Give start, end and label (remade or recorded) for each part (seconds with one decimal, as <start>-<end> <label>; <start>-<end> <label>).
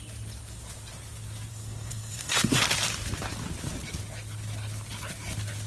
0.0-1.5 recorded; 1.5-2.6 remade; 2.6-5.7 recorded